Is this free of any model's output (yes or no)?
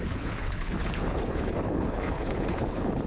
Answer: no